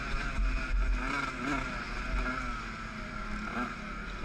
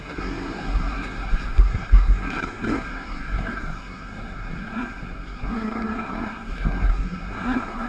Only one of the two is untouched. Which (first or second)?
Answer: first